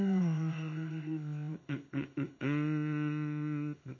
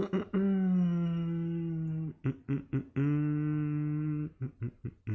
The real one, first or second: second